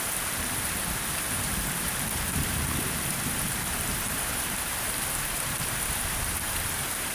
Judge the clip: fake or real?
fake